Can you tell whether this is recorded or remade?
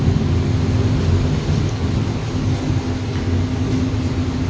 recorded